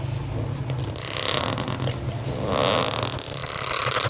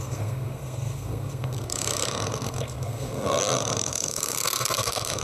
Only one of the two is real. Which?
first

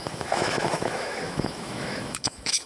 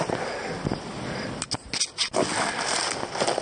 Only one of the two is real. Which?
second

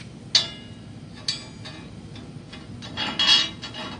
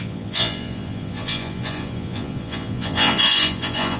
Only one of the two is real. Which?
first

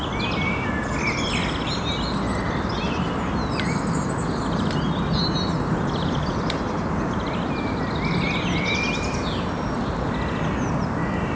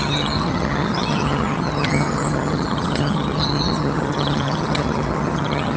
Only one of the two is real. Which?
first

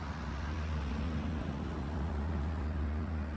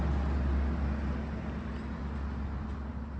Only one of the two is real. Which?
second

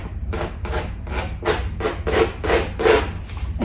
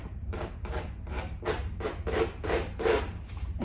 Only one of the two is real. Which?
first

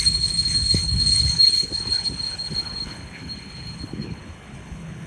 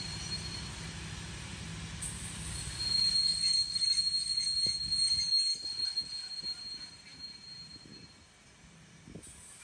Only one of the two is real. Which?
second